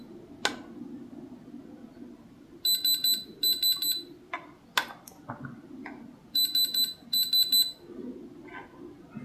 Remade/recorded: recorded